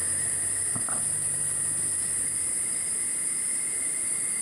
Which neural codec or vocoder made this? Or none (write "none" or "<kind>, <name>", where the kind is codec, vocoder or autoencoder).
none